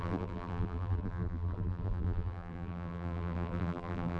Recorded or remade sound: remade